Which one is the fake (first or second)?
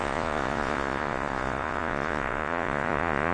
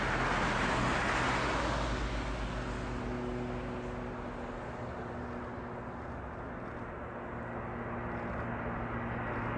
first